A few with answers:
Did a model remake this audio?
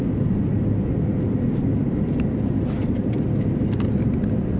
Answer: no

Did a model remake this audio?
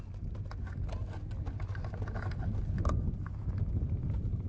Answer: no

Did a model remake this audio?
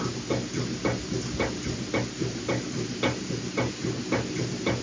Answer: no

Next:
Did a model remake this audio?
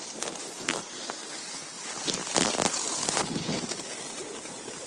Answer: no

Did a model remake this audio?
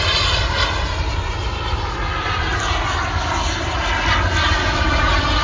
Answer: no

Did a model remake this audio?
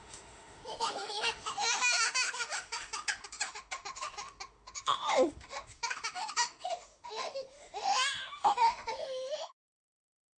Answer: yes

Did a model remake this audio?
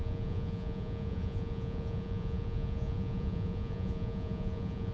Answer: yes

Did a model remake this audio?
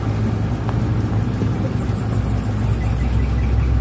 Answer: no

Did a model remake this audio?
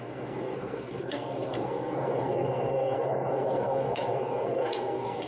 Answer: yes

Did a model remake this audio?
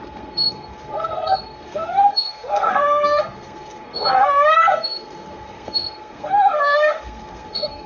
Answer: yes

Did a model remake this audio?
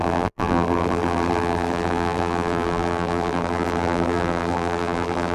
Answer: yes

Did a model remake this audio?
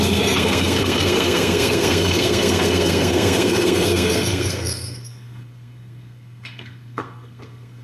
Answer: yes